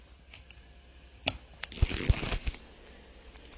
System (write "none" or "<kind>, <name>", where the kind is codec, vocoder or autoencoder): none